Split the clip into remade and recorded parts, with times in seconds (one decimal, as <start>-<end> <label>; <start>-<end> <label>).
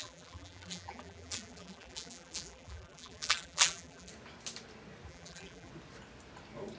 0.0-4.1 remade; 4.1-5.1 recorded; 5.1-5.7 remade; 5.7-6.8 recorded